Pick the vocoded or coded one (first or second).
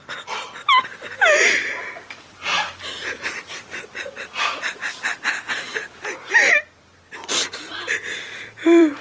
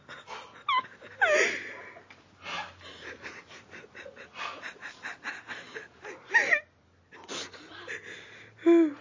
first